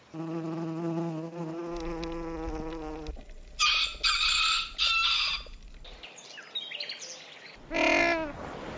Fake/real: real